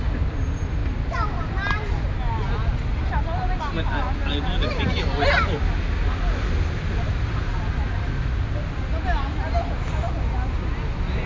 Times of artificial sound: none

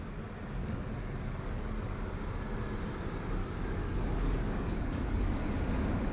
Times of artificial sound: 0.6-2.0 (codec, DAC); 3.4-5.4

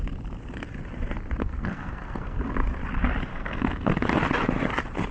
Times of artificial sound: 1.4-2.5 (codec, SNAC); 3.3-3.9

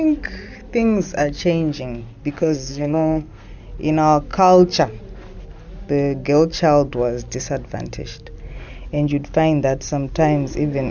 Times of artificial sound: 2.4-3.6 (codec, SNAC)